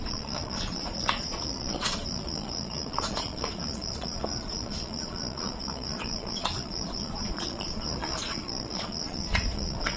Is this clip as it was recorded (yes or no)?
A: no